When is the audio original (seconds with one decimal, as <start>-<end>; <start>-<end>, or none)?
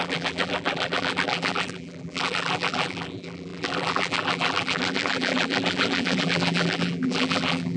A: none